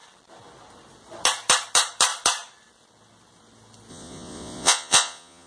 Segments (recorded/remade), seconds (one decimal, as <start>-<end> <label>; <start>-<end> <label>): 0.0-3.9 recorded; 3.9-5.5 remade